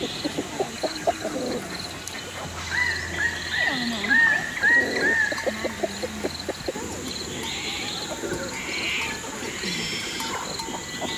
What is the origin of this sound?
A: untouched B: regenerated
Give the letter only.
A